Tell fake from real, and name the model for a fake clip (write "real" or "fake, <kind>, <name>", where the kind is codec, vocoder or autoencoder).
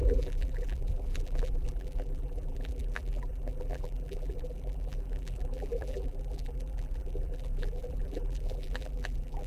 fake, vocoder, BigVGAN v2